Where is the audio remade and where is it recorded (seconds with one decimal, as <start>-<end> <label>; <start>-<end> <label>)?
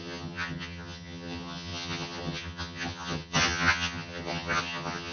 0.0-5.1 remade